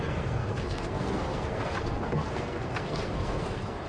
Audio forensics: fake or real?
fake